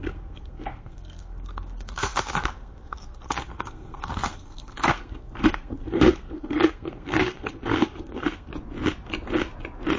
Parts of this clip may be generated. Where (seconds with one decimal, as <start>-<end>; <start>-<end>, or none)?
0.0-8.5